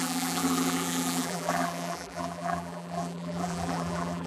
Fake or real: fake